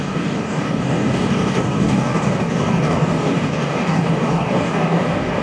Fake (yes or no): yes